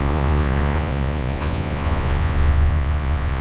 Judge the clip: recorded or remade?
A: remade